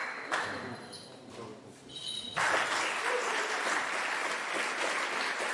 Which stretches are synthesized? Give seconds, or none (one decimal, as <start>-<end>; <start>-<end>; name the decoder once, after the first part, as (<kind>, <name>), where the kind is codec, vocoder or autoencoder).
0.0-0.6 (autoencoder, DAC-VAE)